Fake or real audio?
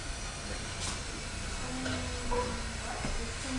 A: real